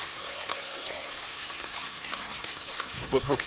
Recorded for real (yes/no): no